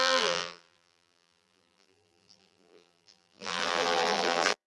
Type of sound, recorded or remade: remade